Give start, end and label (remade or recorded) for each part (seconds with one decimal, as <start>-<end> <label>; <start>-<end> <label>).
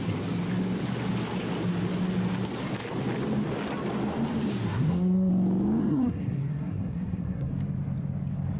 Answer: 0.0-4.7 recorded; 4.7-5.3 remade; 5.3-5.8 recorded; 5.8-7.5 remade; 7.5-8.6 recorded